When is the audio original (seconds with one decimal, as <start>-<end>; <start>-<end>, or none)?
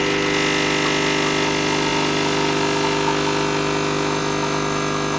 0.0-5.2